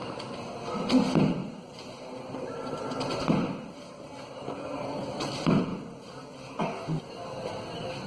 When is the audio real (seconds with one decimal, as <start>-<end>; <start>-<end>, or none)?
0.0-8.1